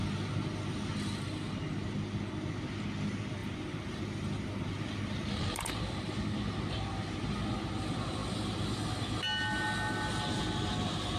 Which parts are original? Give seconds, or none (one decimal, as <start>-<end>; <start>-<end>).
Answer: 0.0-3.4; 5.4-11.2